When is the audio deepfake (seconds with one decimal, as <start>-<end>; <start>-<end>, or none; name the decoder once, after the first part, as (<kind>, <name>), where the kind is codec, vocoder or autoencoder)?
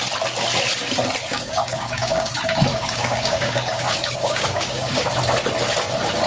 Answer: 1.3-2.3 (codec, DAC); 2.7-5.1